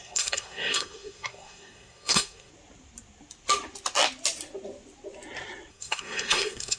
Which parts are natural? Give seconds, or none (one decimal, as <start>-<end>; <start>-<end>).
2.5-5.7